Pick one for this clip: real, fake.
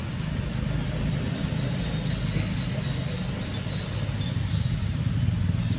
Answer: real